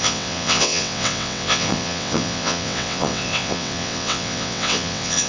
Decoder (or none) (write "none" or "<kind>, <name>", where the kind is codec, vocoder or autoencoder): vocoder, WaveNeXt